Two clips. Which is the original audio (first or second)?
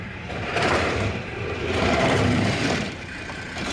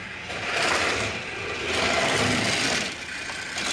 second